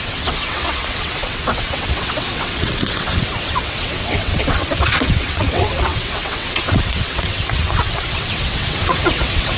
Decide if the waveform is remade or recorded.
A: remade